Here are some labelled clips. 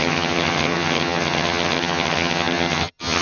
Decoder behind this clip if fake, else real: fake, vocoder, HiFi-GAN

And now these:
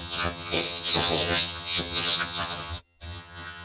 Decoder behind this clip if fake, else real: fake, vocoder, HiFi-GAN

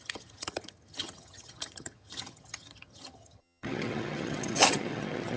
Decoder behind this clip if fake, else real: fake, vocoder, HiFi-GAN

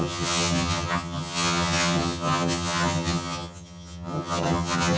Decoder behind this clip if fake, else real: fake, vocoder, HiFi-GAN